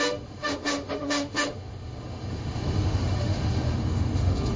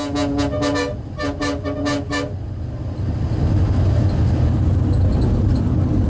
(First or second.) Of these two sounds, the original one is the second